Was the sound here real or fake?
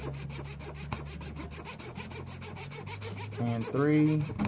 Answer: real